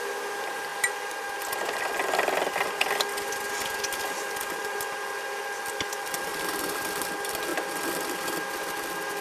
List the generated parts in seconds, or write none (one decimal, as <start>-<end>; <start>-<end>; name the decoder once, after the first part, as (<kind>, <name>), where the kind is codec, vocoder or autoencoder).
0.0-0.7 (vocoder, BigVGAN v2); 5.7-7.5; 8.5-9.2